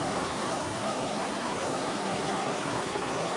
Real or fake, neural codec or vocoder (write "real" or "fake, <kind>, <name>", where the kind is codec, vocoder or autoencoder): fake, codec, SNAC